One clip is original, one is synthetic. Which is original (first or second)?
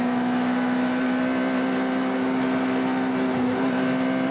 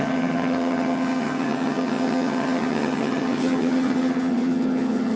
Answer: first